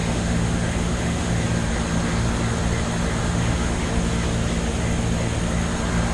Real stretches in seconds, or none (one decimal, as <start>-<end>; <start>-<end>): 1.4-3.2; 3.9-6.1